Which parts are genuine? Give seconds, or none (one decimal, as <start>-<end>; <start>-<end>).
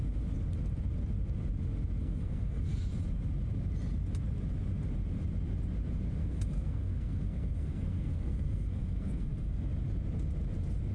0.0-2.0; 2.8-6.2; 9.7-10.9